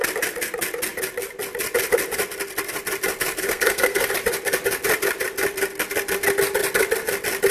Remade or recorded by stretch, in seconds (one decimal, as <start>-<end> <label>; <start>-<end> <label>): 0.0-3.4 recorded; 3.4-4.1 remade; 4.1-7.5 recorded